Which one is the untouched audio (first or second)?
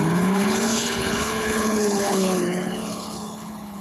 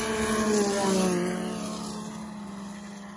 second